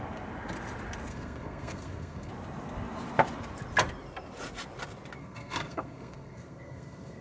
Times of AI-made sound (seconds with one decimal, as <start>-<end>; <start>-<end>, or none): 1.1-2.3; 5.2-7.2